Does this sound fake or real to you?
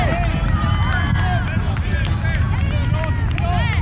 real